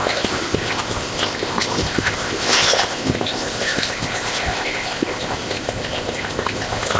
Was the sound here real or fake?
fake